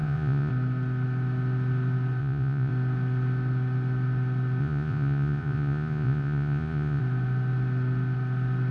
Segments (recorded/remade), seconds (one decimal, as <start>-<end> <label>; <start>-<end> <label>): 0.0-0.5 remade; 0.5-2.2 recorded; 2.2-2.7 remade; 2.7-4.6 recorded; 4.6-7.0 remade; 7.0-8.7 recorded